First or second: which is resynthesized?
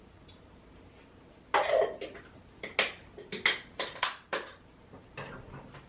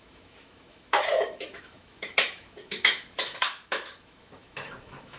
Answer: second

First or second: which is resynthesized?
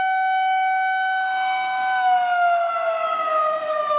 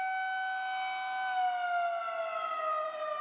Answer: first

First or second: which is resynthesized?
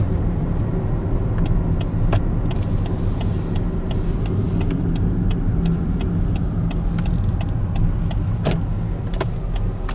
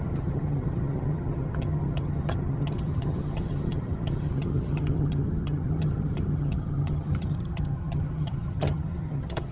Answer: second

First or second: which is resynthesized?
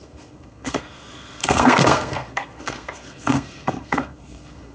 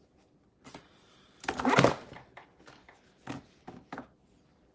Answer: first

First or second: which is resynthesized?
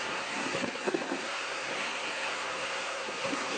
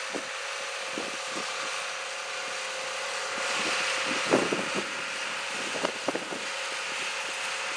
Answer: first